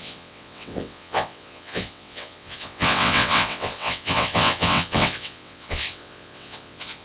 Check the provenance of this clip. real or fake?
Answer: fake